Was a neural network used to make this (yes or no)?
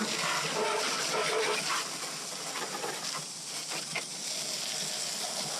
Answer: no